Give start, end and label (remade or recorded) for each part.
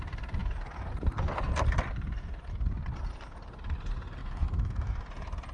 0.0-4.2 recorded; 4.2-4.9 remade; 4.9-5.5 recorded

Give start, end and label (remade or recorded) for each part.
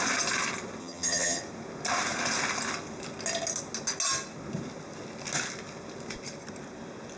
0.0-0.8 recorded; 0.8-1.4 remade; 1.4-7.2 recorded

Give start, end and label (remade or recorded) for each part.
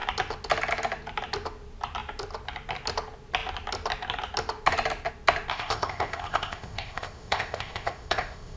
0.0-5.5 recorded; 5.5-8.6 remade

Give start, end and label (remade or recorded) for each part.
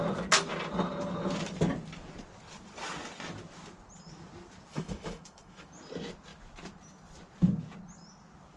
0.0-4.7 recorded; 4.7-5.7 remade; 5.7-8.6 recorded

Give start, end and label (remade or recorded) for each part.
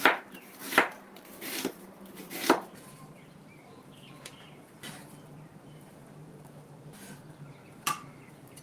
0.0-8.6 remade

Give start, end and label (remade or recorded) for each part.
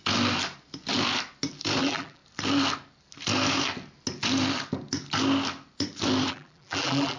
0.0-1.8 recorded; 1.8-2.2 remade; 2.2-6.3 recorded; 6.3-7.2 remade